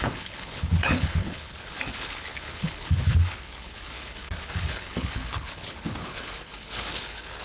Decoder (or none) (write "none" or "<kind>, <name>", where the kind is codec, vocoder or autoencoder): codec, HILCodec